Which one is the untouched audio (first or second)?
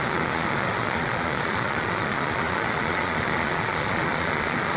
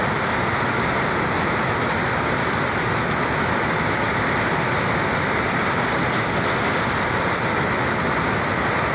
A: second